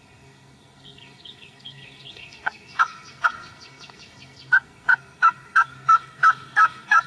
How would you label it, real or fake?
fake